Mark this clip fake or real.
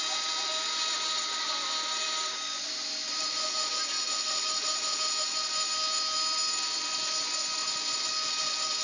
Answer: real